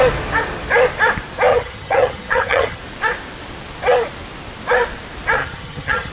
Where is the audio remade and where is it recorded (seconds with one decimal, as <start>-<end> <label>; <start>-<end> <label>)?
0.0-1.5 recorded; 1.5-2.8 remade; 2.8-5.4 recorded; 5.4-6.1 remade